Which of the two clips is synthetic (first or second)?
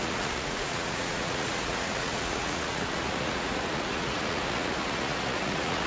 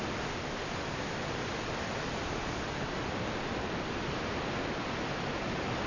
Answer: first